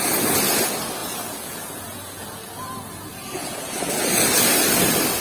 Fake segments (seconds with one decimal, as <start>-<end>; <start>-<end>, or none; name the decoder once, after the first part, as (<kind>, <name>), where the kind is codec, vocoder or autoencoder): 1.0-3.9 (vocoder, Vocos)